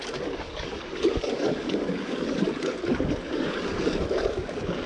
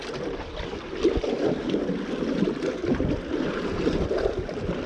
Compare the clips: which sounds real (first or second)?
second